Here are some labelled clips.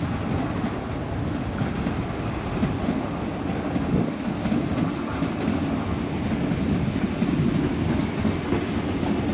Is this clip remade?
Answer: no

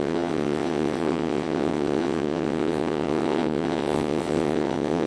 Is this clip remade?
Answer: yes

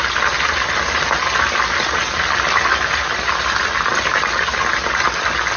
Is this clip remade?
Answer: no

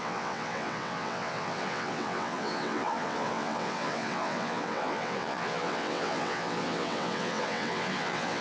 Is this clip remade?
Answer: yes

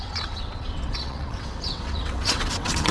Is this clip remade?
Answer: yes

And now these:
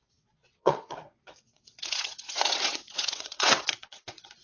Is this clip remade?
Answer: yes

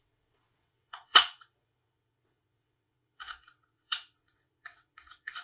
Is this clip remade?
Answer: yes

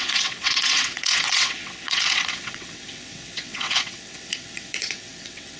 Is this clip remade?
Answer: yes